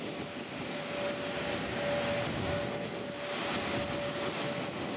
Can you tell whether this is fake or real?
real